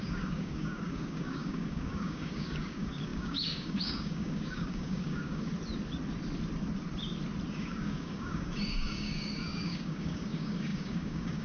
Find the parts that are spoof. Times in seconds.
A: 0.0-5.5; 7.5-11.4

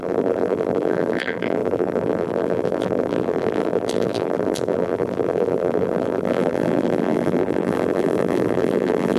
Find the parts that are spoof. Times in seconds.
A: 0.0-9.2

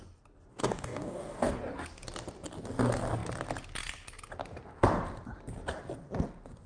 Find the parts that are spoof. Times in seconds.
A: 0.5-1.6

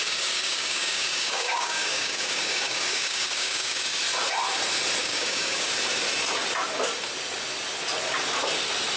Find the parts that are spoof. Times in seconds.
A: 0.0-4.0; 5.0-5.7